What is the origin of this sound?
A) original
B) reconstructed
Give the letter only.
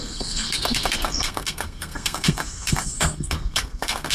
B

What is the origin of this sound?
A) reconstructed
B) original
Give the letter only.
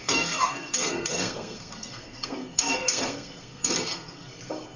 A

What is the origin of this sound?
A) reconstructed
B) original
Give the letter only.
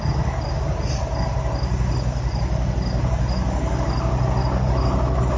B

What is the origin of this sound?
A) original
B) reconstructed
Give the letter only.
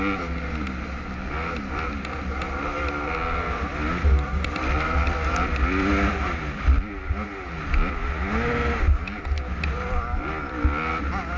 A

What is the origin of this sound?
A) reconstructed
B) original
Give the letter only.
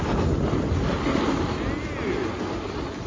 B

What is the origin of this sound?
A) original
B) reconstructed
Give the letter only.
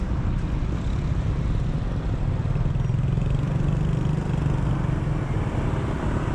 A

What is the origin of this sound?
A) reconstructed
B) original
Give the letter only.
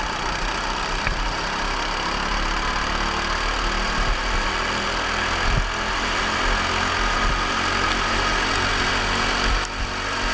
B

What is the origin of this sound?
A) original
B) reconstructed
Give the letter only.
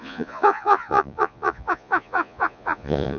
B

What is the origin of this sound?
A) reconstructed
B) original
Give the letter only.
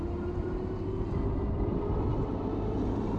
B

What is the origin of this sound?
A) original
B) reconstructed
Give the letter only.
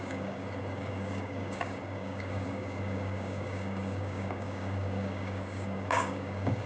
B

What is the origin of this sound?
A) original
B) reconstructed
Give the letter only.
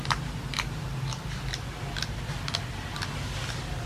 A